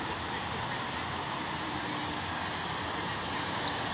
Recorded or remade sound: recorded